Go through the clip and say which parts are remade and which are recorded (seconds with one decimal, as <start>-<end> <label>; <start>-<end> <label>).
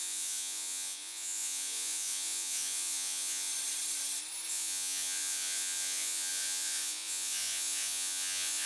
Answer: 0.0-3.5 remade; 3.5-4.5 recorded; 4.5-8.7 remade